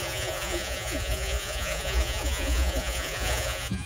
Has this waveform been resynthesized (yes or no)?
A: yes